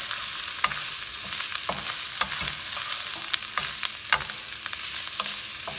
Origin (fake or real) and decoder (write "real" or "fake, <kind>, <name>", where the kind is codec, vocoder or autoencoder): real